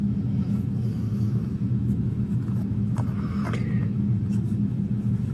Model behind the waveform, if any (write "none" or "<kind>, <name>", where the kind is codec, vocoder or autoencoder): autoencoder, DAC-VAE